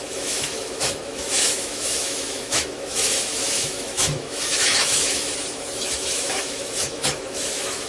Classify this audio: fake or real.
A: fake